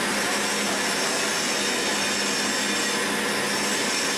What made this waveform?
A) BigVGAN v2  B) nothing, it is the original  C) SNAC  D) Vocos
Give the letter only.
B